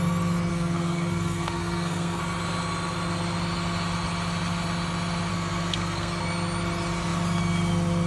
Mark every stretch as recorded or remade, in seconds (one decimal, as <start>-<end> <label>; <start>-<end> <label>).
0.0-0.5 recorded; 0.5-2.2 remade; 2.2-5.3 recorded; 5.3-6.2 remade; 6.2-8.1 recorded